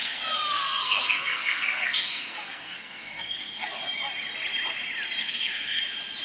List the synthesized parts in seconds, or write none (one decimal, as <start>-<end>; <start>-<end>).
0.0-3.7; 5.2-5.8